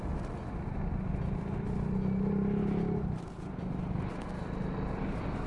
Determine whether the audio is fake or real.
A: real